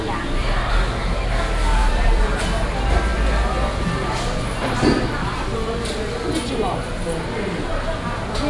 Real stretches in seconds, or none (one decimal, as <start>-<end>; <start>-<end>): 0.0-1.8; 2.5-8.5